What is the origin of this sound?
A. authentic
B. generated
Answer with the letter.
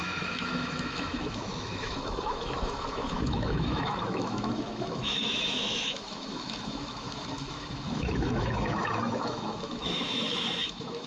B